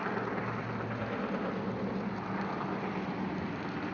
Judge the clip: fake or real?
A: real